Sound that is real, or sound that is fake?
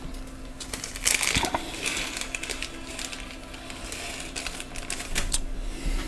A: real